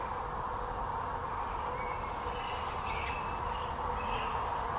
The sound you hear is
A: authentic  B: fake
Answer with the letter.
A